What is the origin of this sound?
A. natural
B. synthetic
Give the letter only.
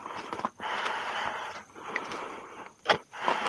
A